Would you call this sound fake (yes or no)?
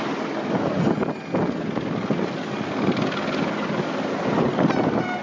no